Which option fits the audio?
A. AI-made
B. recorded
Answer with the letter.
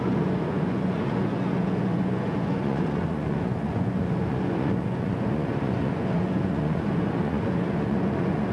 A